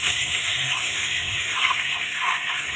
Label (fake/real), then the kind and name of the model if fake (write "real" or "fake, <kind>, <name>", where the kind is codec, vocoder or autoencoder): fake, codec, SNAC